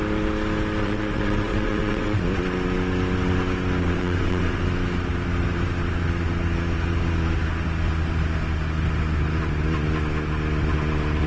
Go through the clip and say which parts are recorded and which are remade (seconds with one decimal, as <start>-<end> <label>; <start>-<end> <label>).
0.0-0.8 recorded; 0.8-2.2 remade; 2.2-3.8 recorded; 3.8-4.6 remade; 4.6-11.3 recorded